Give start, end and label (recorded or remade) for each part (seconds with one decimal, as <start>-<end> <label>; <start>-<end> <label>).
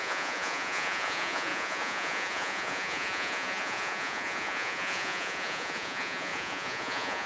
0.0-7.3 remade